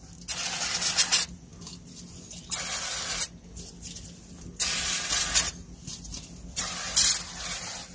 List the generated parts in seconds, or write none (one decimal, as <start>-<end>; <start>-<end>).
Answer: none